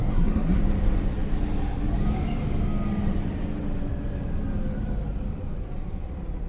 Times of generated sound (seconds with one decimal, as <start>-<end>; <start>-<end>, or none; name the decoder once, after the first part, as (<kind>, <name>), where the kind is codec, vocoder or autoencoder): 0.0-0.6 (codec, SNAC)